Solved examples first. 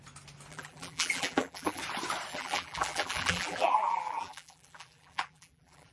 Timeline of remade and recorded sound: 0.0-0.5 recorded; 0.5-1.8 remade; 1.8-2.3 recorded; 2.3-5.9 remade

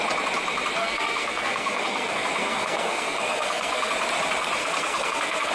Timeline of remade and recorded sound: 0.0-0.8 recorded; 0.8-3.9 remade; 3.9-4.6 recorded; 4.6-5.5 remade

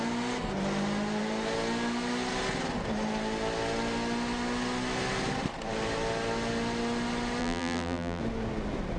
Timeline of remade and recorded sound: 0.0-7.4 recorded; 7.4-8.2 remade; 8.2-9.0 recorded

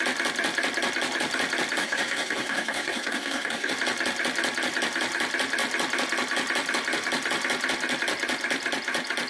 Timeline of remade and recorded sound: 0.0-1.8 recorded; 1.8-3.7 remade; 3.7-9.3 recorded

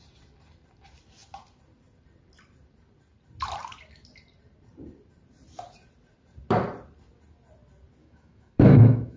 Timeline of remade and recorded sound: 0.0-8.0 recorded; 8.0-9.2 remade

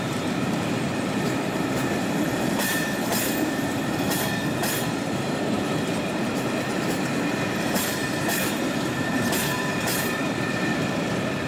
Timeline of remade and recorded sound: 0.0-11.5 remade